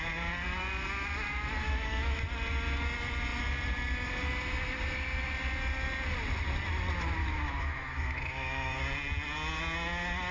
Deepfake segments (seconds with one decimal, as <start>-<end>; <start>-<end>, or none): 1.6-2.2; 7.2-8.8